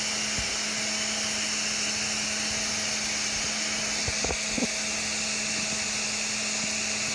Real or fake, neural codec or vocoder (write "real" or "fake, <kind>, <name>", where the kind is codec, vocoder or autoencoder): real